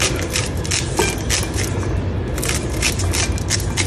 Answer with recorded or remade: recorded